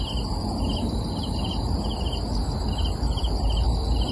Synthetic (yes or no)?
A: no